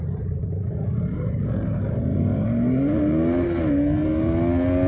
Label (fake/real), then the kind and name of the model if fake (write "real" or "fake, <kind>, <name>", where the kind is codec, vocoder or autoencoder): real